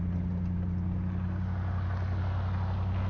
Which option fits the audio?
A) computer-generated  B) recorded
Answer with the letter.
B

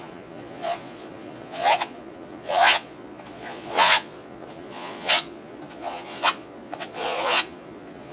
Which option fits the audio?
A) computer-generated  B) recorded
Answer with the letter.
A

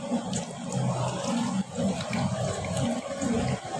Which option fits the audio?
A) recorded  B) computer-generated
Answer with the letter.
A